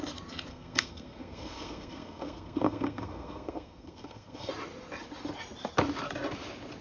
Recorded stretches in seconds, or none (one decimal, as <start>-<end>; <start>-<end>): 0.0-0.5; 4.5-6.8